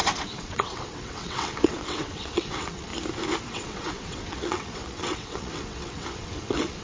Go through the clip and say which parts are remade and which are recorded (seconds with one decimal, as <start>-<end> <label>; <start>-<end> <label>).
0.0-2.9 remade; 2.9-3.5 recorded; 3.5-6.8 remade